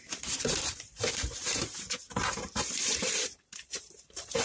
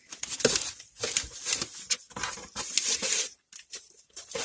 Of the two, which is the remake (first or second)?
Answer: first